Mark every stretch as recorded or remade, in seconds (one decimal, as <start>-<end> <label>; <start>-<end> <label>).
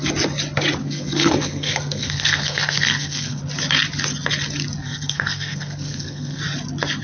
0.0-0.8 recorded; 0.8-3.4 remade; 3.4-4.8 recorded; 4.8-6.4 remade; 6.4-7.0 recorded